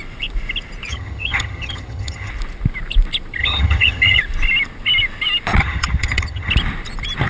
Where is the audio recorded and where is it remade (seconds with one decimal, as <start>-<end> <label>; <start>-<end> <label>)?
0.0-0.9 recorded; 0.9-2.3 remade; 2.3-3.4 recorded; 3.4-4.2 remade; 4.2-5.6 recorded; 5.6-6.5 remade; 6.5-7.3 recorded

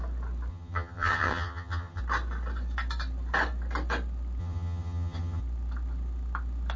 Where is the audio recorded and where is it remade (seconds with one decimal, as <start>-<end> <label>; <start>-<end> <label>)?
0.0-0.5 recorded; 0.5-2.0 remade; 2.0-4.4 recorded; 4.4-5.4 remade; 5.4-6.8 recorded

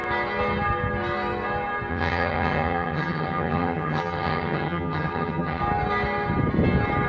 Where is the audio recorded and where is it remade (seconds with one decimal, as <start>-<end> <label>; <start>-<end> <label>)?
0.0-1.9 recorded; 1.9-5.6 remade; 5.6-7.1 recorded

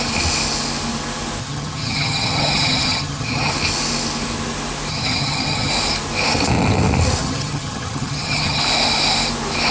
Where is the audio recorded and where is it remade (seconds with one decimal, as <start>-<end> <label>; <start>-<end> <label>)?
0.0-1.4 recorded; 1.4-3.5 remade; 3.5-4.9 recorded; 4.9-5.7 remade; 5.7-7.2 recorded; 7.2-8.6 remade; 8.6-9.7 recorded

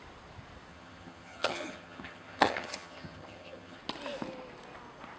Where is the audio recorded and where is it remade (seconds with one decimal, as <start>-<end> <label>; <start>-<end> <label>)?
0.0-0.7 recorded; 0.7-3.8 remade; 3.8-5.2 recorded

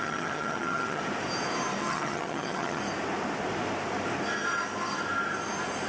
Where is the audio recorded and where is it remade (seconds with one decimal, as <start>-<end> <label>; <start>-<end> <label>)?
0.0-1.0 remade; 1.0-1.8 recorded; 1.8-2.8 remade; 2.8-5.9 recorded

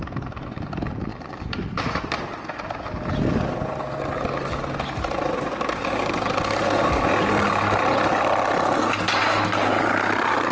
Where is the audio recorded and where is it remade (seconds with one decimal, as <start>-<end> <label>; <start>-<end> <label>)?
0.0-10.5 recorded

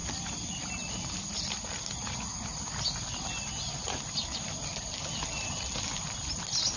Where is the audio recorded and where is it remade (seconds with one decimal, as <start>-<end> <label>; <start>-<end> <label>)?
0.0-6.8 recorded